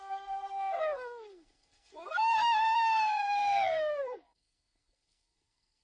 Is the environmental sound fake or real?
fake